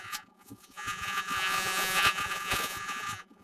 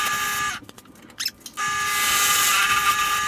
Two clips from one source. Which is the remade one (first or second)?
first